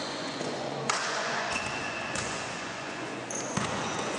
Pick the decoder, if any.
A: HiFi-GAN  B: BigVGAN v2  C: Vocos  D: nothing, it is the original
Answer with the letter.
C